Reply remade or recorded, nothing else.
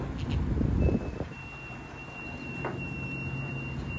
recorded